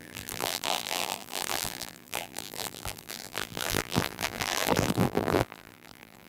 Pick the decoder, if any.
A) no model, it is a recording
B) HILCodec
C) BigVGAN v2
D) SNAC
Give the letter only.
C